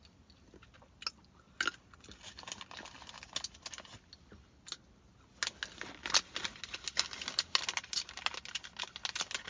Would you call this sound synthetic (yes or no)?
no